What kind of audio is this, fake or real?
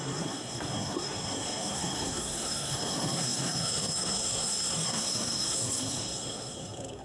fake